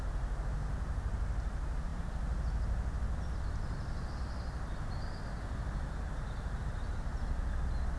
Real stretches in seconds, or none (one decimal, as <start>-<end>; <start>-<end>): 0.0-8.0